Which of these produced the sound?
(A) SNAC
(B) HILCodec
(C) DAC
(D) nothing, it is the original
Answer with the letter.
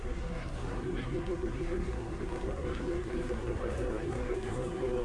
A